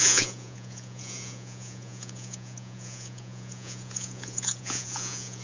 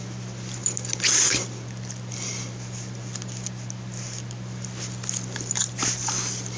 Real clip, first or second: second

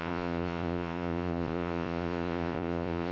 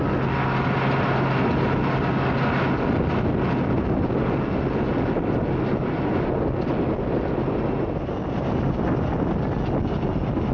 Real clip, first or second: second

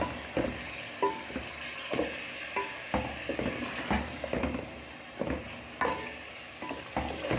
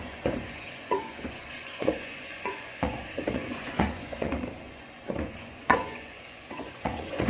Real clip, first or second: first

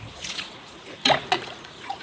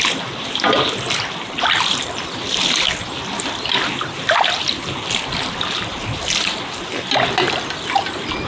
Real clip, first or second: second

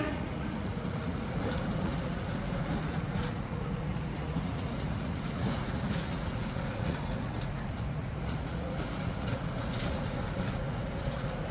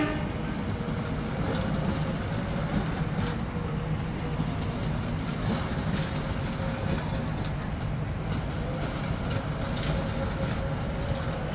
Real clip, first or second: second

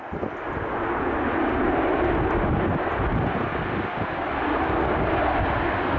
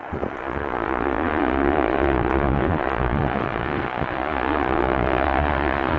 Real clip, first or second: first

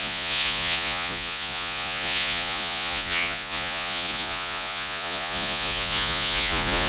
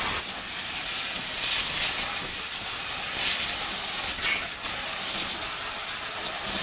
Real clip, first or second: second